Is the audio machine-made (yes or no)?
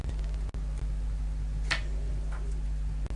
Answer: no